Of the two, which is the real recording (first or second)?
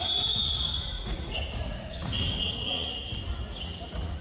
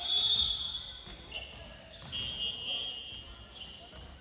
second